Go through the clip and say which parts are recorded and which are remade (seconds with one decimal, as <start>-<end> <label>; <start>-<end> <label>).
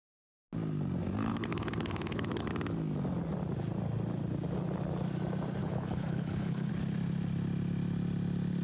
0.0-1.2 recorded; 1.2-2.5 remade; 2.5-5.6 recorded; 5.6-6.7 remade; 6.7-8.6 recorded